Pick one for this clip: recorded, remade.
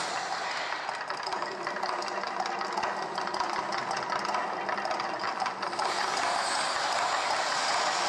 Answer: recorded